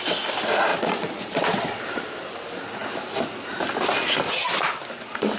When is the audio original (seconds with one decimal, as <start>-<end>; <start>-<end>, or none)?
0.0-0.7; 1.8-5.4